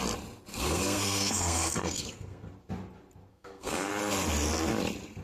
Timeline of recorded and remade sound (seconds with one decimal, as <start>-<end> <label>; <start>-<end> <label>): 0.0-0.5 recorded; 0.5-2.5 remade; 2.5-3.3 recorded; 3.3-3.9 remade; 3.9-5.2 recorded